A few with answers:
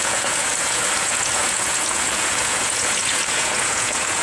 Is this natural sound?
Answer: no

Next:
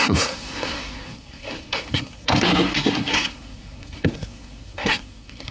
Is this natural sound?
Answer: no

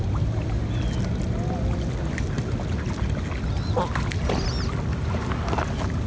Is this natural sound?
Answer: yes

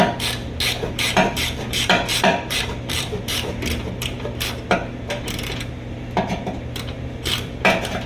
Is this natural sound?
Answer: no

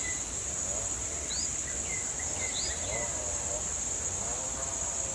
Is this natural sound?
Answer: yes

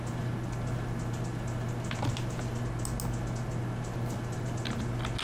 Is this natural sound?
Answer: yes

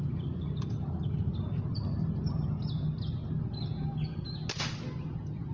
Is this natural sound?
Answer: yes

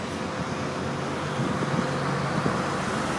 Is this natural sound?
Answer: yes